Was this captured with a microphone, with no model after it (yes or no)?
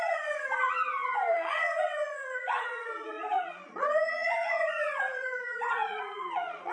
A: no